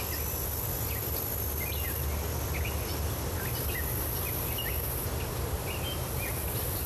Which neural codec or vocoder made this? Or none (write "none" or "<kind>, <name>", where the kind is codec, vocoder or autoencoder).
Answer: none